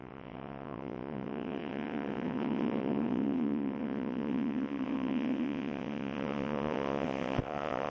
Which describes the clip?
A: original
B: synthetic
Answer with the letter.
B